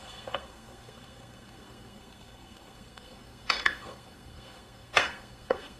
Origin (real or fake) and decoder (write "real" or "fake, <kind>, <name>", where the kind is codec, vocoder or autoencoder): fake, codec, SNAC